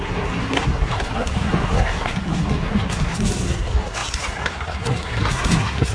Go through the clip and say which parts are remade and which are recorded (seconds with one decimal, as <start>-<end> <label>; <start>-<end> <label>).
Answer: 0.0-5.9 remade

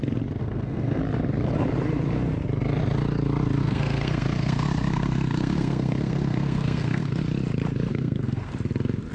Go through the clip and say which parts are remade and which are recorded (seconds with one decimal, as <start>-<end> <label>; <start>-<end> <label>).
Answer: 0.0-0.4 recorded; 0.4-1.0 remade; 1.0-3.6 recorded; 3.6-7.2 remade; 7.2-7.9 recorded; 7.9-8.5 remade; 8.5-9.1 recorded

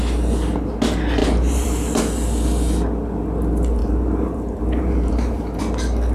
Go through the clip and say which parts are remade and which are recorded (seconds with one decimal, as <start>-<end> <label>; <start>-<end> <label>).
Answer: 0.0-1.2 recorded; 1.2-2.0 remade; 2.0-3.8 recorded; 3.8-5.6 remade; 5.6-6.1 recorded

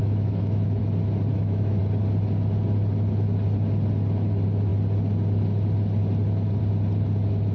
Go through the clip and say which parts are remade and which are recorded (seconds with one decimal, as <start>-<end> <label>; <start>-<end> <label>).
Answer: 0.0-0.8 remade; 0.8-1.3 recorded; 1.3-1.8 remade; 1.8-7.5 recorded

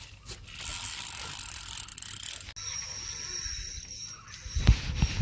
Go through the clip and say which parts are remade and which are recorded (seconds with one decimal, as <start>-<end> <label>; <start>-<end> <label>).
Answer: 0.0-5.2 recorded

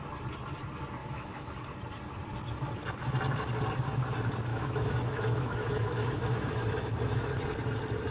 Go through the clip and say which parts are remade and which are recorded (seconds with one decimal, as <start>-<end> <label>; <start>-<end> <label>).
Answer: 0.0-1.0 recorded; 1.0-1.5 remade; 1.5-4.5 recorded; 4.5-7.3 remade; 7.3-8.1 recorded

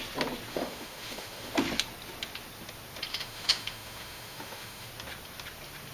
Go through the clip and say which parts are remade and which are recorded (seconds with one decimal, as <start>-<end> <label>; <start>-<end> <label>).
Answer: 0.0-0.5 recorded; 0.5-1.5 remade; 1.5-3.1 recorded; 3.1-4.9 remade; 4.9-5.9 recorded